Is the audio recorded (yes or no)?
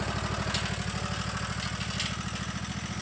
yes